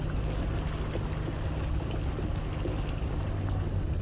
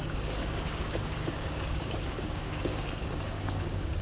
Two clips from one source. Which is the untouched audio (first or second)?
first